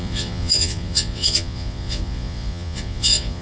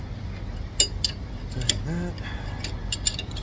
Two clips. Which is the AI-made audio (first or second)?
first